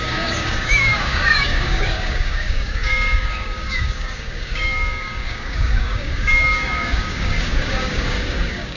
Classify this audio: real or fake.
fake